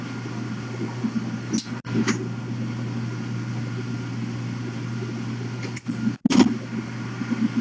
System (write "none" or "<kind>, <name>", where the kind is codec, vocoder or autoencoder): none